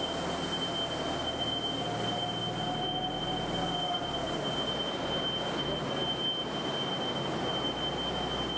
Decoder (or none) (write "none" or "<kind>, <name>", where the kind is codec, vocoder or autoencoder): none